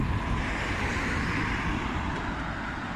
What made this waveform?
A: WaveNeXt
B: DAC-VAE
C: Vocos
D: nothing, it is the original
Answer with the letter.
D